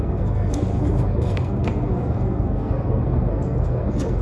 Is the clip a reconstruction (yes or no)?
yes